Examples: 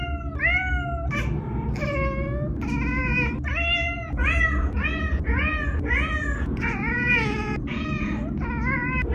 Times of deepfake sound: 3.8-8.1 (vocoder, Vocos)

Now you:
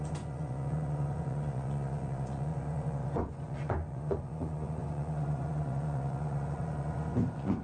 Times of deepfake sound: 0.0-7.6 (vocoder, Vocos)

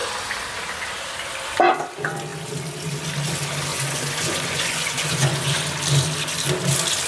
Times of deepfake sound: 3.7-5.7 (vocoder, Vocos)

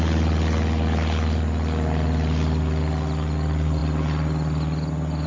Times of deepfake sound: none